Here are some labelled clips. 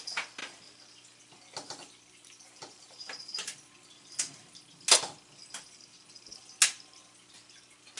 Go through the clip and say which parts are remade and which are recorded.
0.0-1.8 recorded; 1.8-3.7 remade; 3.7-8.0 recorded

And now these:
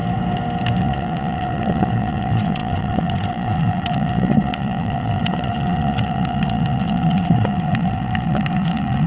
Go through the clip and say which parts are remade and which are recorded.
0.0-0.8 recorded; 0.8-9.1 remade

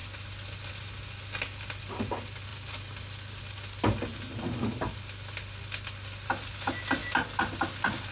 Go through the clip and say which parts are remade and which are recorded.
0.0-8.1 recorded